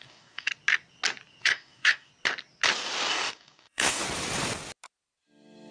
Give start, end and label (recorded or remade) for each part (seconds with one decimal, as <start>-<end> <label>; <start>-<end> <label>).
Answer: 0.0-0.5 remade; 0.5-1.4 recorded; 1.4-2.1 remade; 2.1-3.1 recorded; 3.1-4.0 remade; 4.0-5.7 recorded